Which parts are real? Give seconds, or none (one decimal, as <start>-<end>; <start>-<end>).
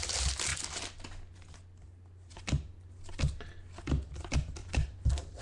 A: 0.0-4.6